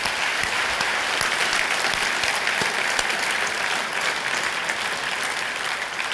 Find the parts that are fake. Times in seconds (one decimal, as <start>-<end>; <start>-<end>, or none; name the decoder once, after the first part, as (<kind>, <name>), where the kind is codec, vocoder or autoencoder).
none